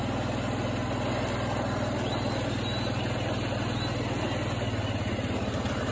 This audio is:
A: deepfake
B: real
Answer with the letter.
B